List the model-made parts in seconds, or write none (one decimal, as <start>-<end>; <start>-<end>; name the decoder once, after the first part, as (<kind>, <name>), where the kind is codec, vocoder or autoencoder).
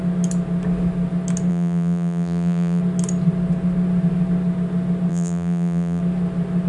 1.5-2.8 (vocoder, BigVGAN v2); 5.1-6.0